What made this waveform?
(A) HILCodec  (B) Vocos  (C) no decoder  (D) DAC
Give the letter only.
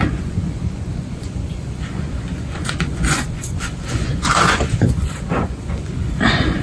B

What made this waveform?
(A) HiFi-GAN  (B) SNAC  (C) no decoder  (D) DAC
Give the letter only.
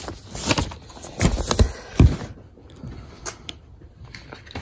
C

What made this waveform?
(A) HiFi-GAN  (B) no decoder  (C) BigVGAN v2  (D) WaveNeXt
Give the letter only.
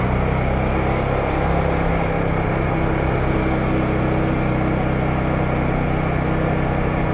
B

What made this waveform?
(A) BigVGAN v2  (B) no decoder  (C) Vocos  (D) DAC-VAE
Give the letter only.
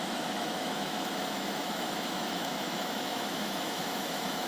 D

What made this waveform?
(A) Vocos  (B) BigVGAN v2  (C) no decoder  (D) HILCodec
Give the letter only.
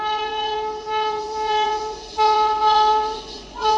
A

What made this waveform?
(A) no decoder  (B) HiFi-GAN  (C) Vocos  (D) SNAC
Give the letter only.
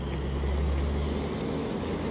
A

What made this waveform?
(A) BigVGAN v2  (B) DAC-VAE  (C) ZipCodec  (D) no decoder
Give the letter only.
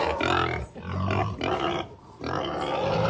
D